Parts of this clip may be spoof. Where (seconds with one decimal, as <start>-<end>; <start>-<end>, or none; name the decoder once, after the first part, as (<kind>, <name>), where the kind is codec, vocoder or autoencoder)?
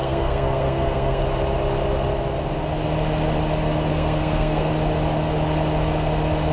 0.0-1.2 (codec, SNAC); 3.9-4.7